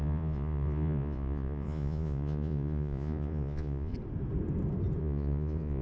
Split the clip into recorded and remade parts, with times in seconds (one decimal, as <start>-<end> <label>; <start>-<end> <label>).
0.0-3.9 remade; 3.9-5.0 recorded; 5.0-5.8 remade

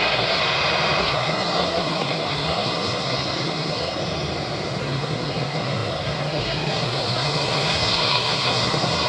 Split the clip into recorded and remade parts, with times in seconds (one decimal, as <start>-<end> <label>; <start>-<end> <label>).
0.0-0.4 remade; 0.4-1.0 recorded; 1.0-4.0 remade; 4.0-4.8 recorded; 4.8-9.1 remade

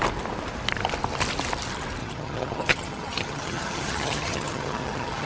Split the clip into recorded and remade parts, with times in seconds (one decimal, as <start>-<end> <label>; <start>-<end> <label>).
0.0-2.0 recorded; 2.0-5.3 remade

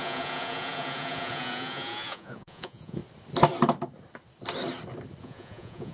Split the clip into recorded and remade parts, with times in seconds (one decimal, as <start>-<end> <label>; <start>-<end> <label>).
0.0-3.0 remade; 3.0-5.2 recorded; 5.2-5.9 remade

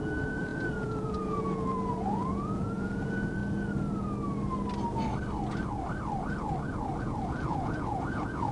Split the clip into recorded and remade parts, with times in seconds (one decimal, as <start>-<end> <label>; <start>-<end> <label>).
0.0-3.4 remade; 3.4-7.0 recorded; 7.0-8.5 remade